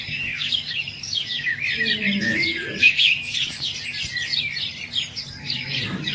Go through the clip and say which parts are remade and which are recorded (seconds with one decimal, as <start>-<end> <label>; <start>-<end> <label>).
0.0-1.5 remade; 1.5-2.2 recorded; 2.2-3.7 remade; 3.7-5.3 recorded; 5.3-6.1 remade